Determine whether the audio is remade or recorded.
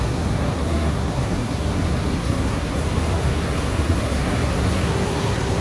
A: remade